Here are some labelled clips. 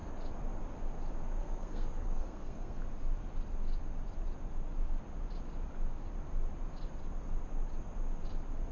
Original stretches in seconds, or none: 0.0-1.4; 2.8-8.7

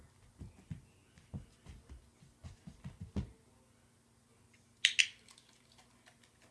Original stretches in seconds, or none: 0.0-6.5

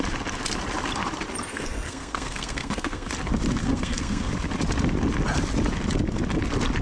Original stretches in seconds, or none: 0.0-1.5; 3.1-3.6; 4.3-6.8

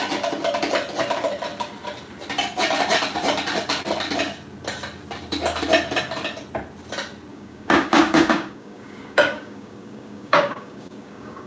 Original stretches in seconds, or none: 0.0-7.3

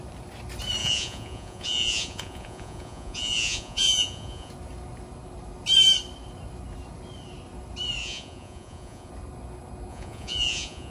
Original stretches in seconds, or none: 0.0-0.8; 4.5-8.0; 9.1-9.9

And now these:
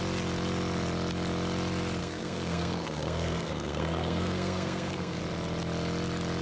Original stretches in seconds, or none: 0.0-2.0; 5.2-6.4

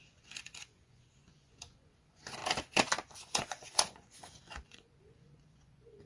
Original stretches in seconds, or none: 2.4-3.2

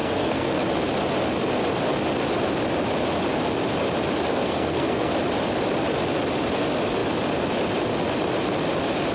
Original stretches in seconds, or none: 0.6-4.3; 5.1-9.1